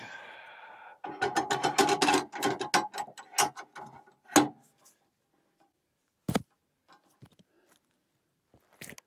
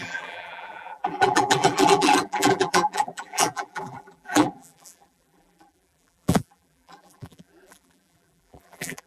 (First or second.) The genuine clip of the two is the first